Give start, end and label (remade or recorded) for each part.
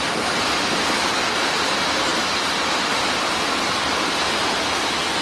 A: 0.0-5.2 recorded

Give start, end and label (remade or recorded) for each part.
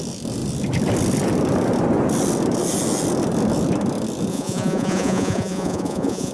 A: 0.0-4.3 recorded; 4.3-6.3 remade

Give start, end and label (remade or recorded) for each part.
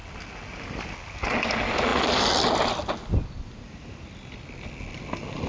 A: 0.0-5.5 recorded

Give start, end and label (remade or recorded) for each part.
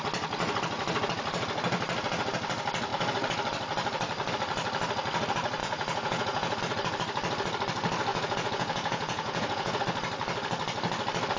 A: 0.0-5.6 recorded; 5.6-6.6 remade; 6.6-8.1 recorded; 8.1-9.8 remade; 9.8-11.4 recorded